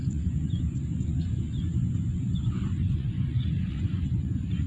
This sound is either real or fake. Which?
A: fake